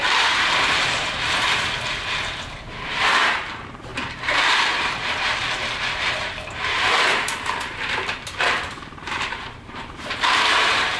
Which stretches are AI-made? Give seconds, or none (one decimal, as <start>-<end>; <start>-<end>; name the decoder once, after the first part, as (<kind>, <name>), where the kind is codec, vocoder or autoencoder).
0.0-11.0 (vocoder, BigVGAN v2)